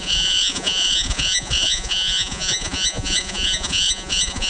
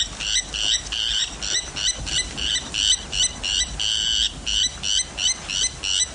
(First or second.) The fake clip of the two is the first